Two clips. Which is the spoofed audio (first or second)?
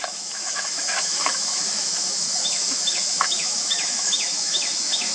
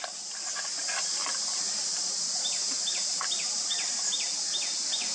first